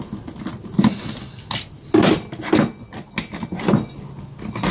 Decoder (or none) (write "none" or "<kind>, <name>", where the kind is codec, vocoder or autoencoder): none